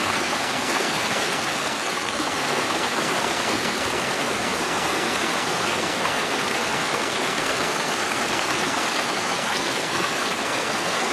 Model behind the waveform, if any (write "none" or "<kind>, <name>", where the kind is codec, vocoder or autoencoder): codec, SNAC